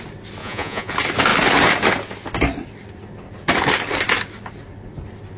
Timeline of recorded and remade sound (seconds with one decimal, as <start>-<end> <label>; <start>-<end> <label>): 0.0-0.4 recorded; 0.4-0.9 remade; 0.9-5.4 recorded